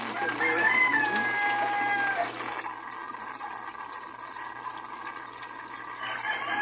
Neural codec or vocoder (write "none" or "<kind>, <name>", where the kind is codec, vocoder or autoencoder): none